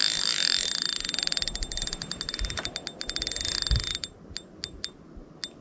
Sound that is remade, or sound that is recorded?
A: recorded